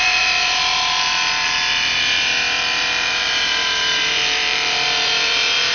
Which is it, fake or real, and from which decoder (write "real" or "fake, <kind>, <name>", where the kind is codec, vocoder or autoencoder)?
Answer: fake, vocoder, BigVGAN v2